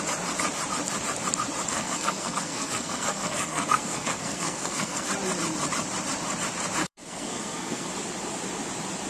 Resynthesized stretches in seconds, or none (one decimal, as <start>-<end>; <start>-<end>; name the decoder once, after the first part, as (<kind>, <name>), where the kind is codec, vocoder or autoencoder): 1.7-5.1 (codec, SNAC); 6.8-7.9